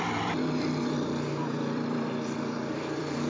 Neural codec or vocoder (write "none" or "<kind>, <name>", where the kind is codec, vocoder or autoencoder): vocoder, BigVGAN v2